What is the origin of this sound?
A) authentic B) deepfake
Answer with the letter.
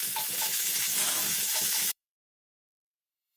B